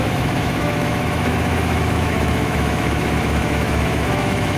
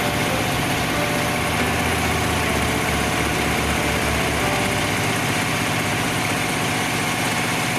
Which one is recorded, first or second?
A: second